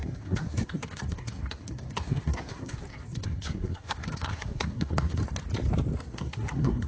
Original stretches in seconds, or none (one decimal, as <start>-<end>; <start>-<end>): 5.2-6.0